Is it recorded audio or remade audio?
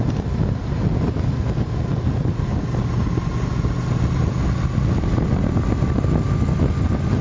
recorded